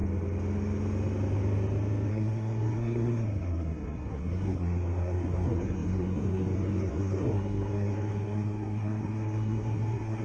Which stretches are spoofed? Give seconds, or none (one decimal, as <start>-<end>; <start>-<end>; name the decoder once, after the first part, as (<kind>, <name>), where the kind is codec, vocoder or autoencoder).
2.1-10.2 (codec, SNAC)